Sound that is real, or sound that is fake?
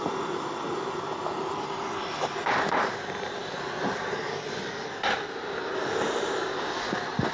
real